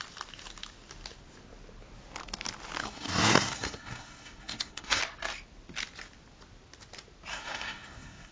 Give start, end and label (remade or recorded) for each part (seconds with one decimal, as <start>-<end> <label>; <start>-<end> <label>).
0.0-2.8 recorded; 2.8-5.0 remade; 5.0-7.3 recorded; 7.3-8.3 remade